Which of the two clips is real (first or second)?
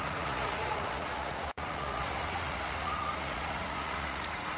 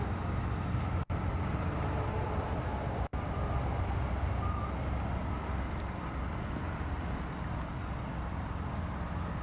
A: second